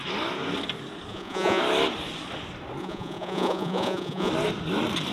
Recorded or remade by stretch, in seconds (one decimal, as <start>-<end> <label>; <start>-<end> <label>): 0.0-1.1 recorded; 1.1-1.6 remade; 1.6-2.8 recorded; 2.8-4.3 remade; 4.3-5.1 recorded